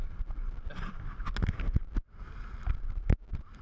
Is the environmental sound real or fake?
real